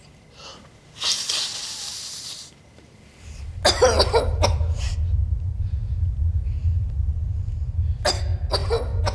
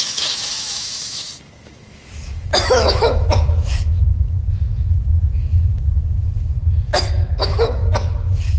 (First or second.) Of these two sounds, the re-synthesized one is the second